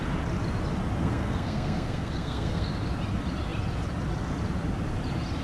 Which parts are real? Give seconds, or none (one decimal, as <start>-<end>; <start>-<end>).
0.0-1.0; 2.7-5.4